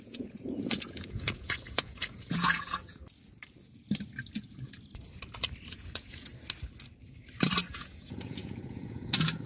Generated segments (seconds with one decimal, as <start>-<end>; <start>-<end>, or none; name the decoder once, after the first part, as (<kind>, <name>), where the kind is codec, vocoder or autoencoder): 0.0-3.0 (vocoder, Vocos); 5.7-6.3; 7.7-9.5